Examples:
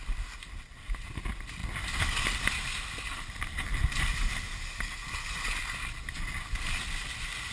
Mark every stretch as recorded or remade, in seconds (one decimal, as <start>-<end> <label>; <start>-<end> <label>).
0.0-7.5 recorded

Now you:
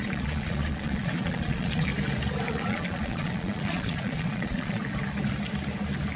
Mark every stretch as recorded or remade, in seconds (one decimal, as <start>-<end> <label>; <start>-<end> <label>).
0.0-1.9 remade; 1.9-2.5 recorded; 2.5-4.8 remade; 4.8-6.2 recorded

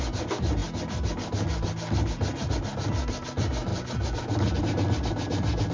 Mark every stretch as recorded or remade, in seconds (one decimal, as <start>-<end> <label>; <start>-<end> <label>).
0.0-5.7 recorded

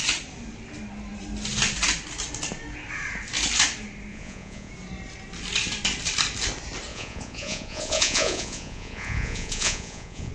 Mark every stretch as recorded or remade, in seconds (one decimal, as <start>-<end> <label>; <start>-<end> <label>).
0.0-4.1 recorded; 4.1-4.7 remade; 4.7-6.9 recorded; 6.9-10.3 remade

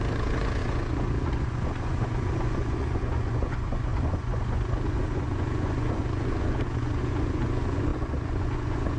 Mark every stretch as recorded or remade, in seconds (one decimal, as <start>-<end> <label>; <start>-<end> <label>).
0.0-9.0 remade

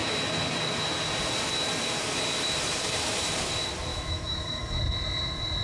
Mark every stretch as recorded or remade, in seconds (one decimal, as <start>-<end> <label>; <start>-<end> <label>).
0.0-3.9 recorded; 3.9-4.8 remade; 4.8-5.6 recorded

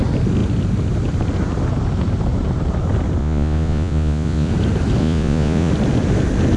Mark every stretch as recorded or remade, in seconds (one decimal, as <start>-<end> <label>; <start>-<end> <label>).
0.0-3.2 recorded; 3.2-4.5 remade; 4.5-5.0 recorded; 5.0-5.7 remade; 5.7-6.6 recorded